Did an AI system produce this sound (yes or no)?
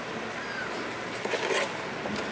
no